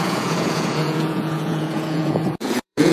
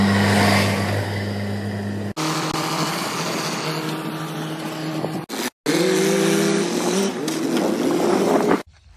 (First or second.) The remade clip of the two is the first